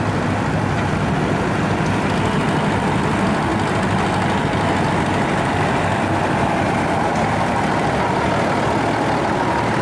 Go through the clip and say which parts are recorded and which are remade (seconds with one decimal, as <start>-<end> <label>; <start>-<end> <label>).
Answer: 0.0-9.8 recorded